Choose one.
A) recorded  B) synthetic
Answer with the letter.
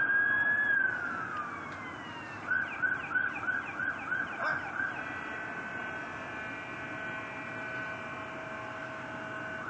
A